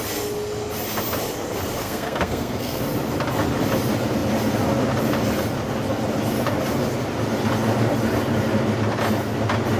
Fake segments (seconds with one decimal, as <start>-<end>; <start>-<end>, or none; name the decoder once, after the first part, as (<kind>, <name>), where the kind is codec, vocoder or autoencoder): 1.8-2.8 (codec, SNAC)